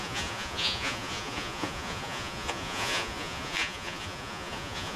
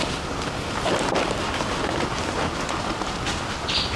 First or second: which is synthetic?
first